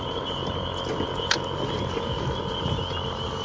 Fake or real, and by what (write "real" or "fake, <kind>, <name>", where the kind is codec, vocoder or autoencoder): real